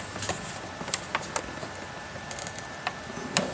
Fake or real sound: real